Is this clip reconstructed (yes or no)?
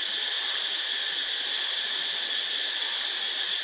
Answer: no